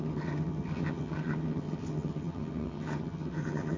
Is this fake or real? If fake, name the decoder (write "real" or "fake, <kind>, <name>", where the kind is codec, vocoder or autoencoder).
fake, vocoder, HiFi-GAN